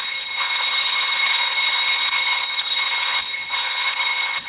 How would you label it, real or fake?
fake